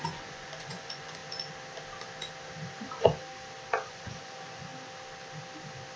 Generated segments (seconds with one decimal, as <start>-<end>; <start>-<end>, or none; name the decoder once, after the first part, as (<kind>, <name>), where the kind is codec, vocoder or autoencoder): 0.0-1.2 (vocoder, Vocos); 3.9-4.7

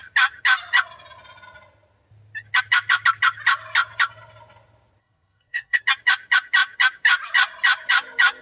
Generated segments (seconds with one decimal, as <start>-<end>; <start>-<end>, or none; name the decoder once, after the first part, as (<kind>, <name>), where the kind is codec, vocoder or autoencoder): 5.0-5.8 (codec, SNAC)